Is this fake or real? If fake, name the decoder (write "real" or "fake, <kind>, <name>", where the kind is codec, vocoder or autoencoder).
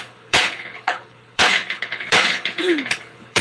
fake, codec, HILCodec